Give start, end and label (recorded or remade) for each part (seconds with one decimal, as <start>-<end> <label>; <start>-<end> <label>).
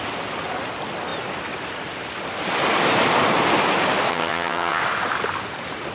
0.0-4.1 recorded; 4.1-4.8 remade; 4.8-5.9 recorded